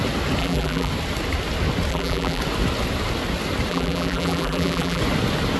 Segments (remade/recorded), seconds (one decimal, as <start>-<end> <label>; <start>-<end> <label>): 0.0-0.4 recorded; 0.4-0.9 remade; 0.9-1.9 recorded; 1.9-2.4 remade; 2.4-3.7 recorded; 3.7-5.0 remade; 5.0-5.6 recorded